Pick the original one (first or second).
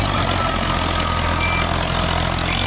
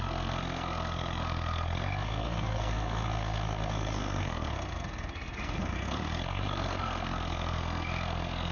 first